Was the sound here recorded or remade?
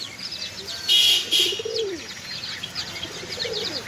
recorded